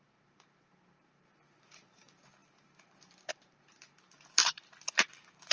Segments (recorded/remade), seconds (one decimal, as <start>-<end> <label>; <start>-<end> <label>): 0.0-5.5 remade

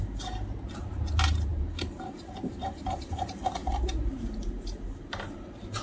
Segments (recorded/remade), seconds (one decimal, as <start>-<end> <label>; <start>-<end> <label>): 0.0-3.6 remade; 3.6-4.1 recorded; 4.1-5.8 remade

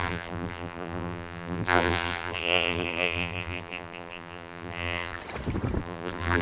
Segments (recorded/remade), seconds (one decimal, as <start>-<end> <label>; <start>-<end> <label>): 0.0-5.2 remade; 5.2-5.8 recorded; 5.8-6.4 remade

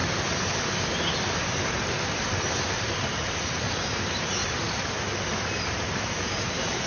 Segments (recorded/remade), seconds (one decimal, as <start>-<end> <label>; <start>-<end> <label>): 0.0-3.5 recorded; 3.5-4.4 remade; 4.4-6.1 recorded; 6.1-6.9 remade

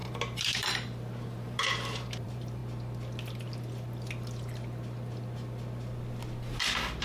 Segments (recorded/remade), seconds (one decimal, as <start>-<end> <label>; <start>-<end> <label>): 0.0-2.6 remade; 2.6-7.0 recorded

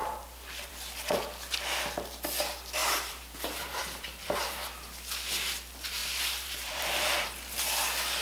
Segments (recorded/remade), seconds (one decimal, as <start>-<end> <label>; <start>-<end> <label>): 0.0-2.8 recorded; 2.8-4.7 remade; 4.7-6.0 recorded; 6.0-7.3 remade; 7.3-8.2 recorded

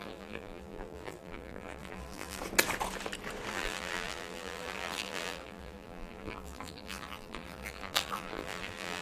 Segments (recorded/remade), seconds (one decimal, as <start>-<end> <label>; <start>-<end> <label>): 0.0-2.4 remade; 2.4-3.5 recorded; 3.5-9.0 remade